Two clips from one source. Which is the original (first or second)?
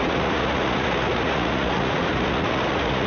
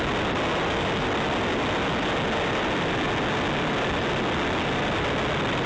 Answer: second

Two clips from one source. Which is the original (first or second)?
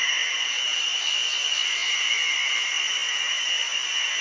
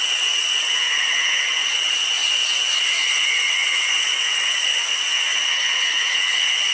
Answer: first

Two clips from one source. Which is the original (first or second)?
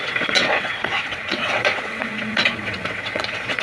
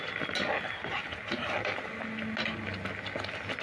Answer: second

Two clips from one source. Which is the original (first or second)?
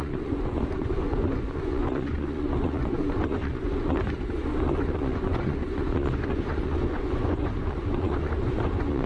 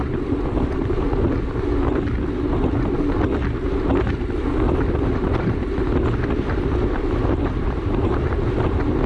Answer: second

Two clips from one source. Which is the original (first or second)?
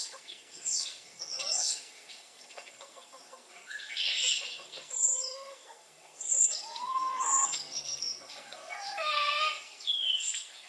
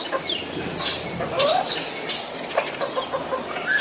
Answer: second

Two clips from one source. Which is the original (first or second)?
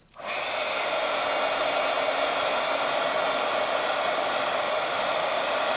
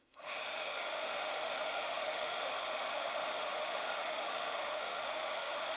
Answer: first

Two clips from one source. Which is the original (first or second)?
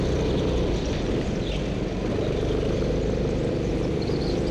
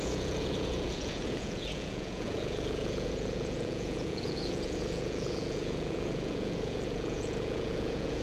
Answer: first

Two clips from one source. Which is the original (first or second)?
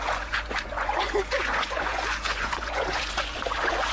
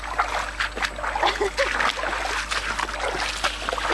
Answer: second